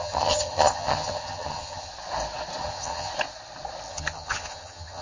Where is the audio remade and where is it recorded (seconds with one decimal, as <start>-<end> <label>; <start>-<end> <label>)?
0.0-1.9 remade; 1.9-2.6 recorded; 2.6-3.1 remade; 3.1-3.9 recorded; 3.9-5.0 remade